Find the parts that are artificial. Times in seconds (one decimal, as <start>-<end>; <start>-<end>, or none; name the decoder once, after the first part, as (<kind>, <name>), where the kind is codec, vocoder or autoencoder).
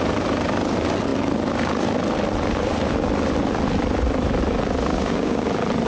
4.9-5.5 (codec, DAC)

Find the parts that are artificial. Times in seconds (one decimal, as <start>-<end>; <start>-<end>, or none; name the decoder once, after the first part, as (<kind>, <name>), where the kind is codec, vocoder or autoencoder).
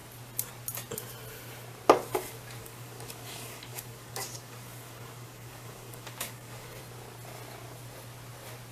2.6-6.8 (codec, DAC)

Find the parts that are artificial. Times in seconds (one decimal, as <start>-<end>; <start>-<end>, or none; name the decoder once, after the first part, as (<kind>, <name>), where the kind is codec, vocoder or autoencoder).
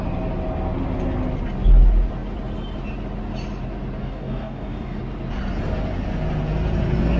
4.0-5.0 (codec, DAC)